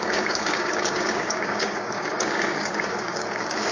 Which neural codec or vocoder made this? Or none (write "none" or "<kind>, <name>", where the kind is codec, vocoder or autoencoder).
codec, DAC